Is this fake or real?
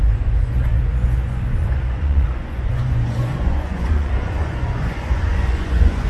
fake